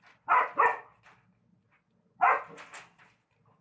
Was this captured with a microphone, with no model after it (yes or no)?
yes